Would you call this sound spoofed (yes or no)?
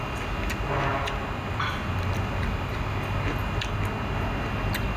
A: no